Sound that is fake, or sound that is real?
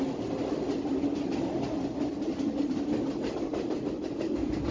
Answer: real